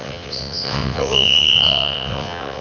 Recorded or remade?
remade